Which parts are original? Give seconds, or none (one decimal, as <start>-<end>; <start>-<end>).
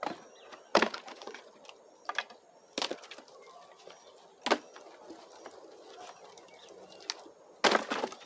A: 0.0-0.7; 1.5-8.3